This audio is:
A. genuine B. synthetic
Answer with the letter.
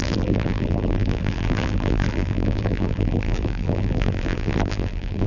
B